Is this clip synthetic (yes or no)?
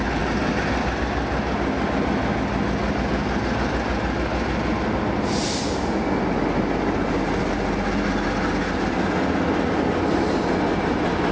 no